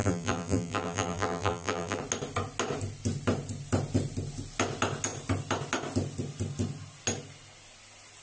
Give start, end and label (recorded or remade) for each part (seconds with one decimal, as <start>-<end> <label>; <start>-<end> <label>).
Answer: 0.0-2.0 remade; 2.0-8.2 recorded

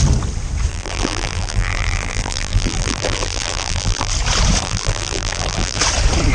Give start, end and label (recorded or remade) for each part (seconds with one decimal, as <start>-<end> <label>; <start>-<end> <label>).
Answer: 0.0-0.7 recorded; 0.7-4.1 remade; 4.1-4.6 recorded; 4.6-5.8 remade; 5.8-6.3 recorded

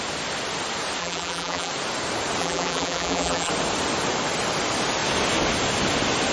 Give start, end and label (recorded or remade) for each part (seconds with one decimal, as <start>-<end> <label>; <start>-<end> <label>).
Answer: 0.0-1.0 recorded; 1.0-1.7 remade; 1.7-2.4 recorded; 2.4-3.5 remade; 3.5-6.3 recorded

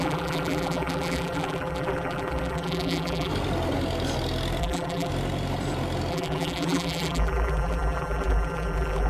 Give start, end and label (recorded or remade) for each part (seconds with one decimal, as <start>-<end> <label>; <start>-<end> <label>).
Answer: 0.0-3.3 remade; 3.3-4.6 recorded; 4.6-5.1 remade; 5.1-6.1 recorded; 6.1-9.1 remade